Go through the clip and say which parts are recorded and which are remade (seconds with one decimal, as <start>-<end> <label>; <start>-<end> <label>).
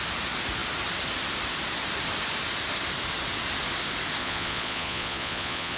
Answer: 0.0-4.2 recorded; 4.2-5.8 remade